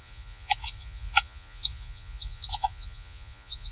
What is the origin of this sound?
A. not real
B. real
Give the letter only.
A